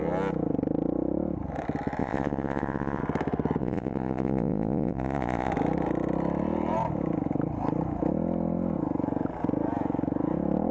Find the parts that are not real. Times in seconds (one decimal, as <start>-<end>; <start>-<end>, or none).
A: 2.0-3.0; 3.6-5.5